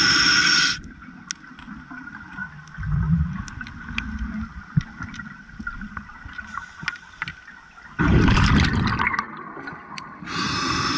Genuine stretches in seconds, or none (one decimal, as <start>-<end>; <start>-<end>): 0.0-11.0